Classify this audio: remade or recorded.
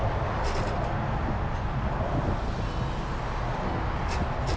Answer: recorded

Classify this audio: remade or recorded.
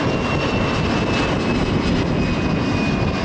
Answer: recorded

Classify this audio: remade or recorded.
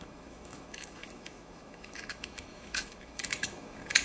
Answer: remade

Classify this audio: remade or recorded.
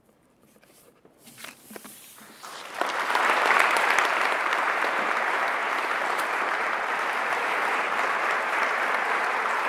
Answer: remade